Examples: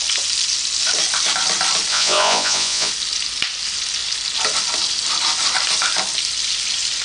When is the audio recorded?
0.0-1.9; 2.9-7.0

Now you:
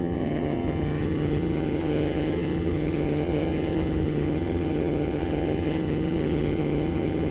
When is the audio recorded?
none

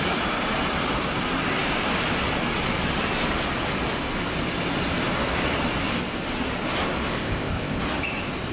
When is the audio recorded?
0.0-7.1; 7.8-8.5

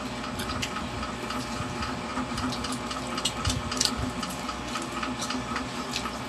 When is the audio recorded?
0.0-6.3